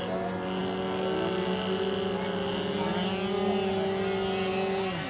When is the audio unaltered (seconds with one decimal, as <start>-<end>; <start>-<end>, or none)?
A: 0.0-5.1